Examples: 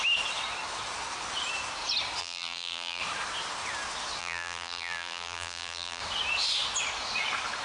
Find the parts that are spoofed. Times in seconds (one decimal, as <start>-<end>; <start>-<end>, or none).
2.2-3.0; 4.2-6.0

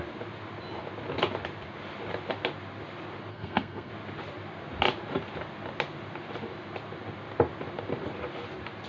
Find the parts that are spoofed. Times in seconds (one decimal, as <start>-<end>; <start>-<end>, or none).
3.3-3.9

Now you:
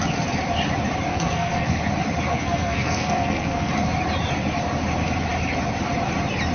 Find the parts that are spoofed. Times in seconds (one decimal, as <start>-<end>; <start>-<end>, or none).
1.1-1.8; 2.3-3.7